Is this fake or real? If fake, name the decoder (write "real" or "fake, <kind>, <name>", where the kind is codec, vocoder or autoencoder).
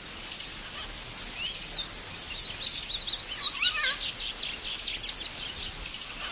real